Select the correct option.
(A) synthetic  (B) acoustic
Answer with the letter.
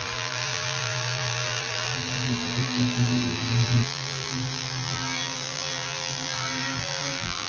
A